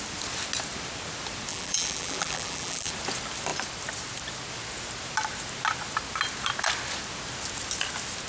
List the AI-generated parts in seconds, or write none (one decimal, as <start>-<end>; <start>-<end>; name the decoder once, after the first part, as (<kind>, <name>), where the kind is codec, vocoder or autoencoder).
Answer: 1.5-2.9 (vocoder, BigVGAN v2)